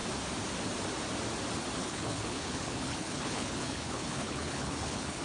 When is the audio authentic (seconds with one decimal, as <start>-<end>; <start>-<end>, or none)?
0.0-1.8